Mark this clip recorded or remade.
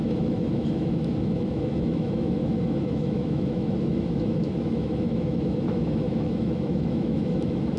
remade